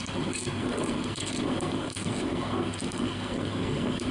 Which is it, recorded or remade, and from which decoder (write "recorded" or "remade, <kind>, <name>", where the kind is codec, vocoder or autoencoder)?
remade, codec, SNAC